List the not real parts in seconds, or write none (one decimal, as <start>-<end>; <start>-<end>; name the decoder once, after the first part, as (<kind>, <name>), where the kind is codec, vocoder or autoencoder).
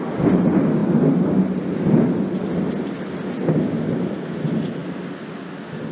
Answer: none